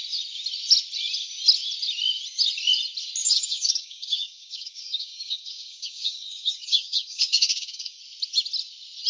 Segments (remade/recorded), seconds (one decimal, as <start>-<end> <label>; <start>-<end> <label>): 0.0-3.2 recorded; 3.2-8.0 remade; 8.0-9.1 recorded